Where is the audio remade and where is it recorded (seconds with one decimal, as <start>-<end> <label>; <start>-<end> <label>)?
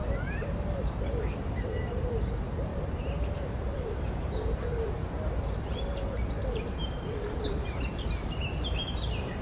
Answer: 0.0-9.4 remade